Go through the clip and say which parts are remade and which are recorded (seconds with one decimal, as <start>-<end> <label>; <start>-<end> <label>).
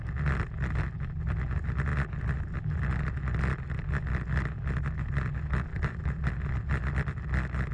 0.0-5.7 recorded; 5.7-6.3 remade; 6.3-7.7 recorded